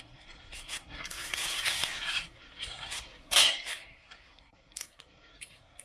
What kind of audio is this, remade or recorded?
remade